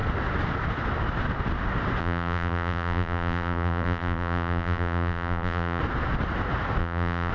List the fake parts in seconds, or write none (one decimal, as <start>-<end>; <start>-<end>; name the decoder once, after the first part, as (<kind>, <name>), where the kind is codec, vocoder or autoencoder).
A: 2.0-5.8 (vocoder, BigVGAN v2); 6.8-7.3